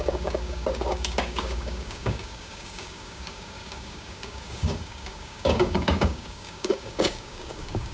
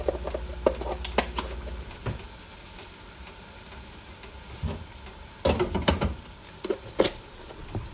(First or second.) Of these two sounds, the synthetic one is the first